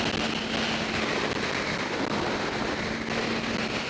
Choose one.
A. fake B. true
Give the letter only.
B